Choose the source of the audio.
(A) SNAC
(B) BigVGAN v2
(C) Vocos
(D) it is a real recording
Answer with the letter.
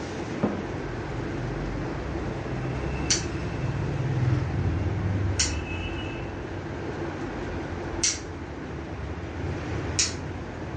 D